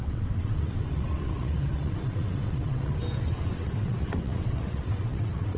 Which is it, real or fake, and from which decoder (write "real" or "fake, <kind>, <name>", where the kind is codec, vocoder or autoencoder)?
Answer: fake, vocoder, WaveNeXt